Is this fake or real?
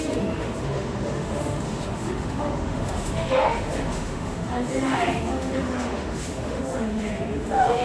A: fake